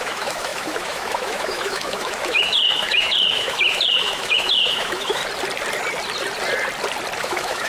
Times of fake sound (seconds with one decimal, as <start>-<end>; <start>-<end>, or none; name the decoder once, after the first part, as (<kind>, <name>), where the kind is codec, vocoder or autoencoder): 0.0-5.2 (autoencoder, DAC-VAE); 7.2-7.7